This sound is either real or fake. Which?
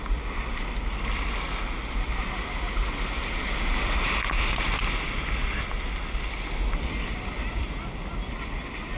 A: real